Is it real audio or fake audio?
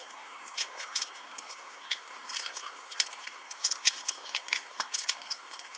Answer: fake